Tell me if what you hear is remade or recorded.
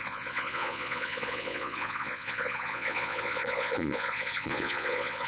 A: remade